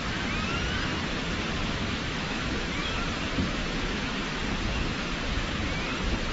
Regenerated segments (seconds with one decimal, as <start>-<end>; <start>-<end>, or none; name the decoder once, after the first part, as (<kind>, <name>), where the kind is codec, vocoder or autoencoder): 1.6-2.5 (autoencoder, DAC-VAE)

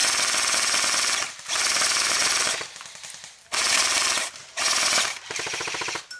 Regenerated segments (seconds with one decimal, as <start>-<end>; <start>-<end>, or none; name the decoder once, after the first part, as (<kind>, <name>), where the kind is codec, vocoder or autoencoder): 1.3-2.2 (vocoder, BigVGAN v2); 4.4-6.2

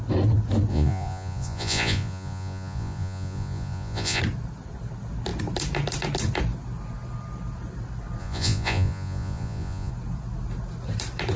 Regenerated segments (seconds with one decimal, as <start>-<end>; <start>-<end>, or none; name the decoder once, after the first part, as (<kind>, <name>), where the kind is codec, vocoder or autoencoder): 0.7-4.2 (vocoder, Vocos); 8.2-9.9

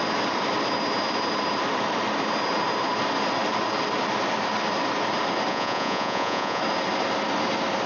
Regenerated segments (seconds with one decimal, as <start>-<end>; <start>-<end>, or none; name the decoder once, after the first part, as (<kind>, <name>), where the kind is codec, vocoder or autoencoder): 5.5-6.6 (vocoder, Vocos)